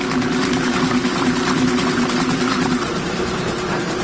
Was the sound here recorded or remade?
remade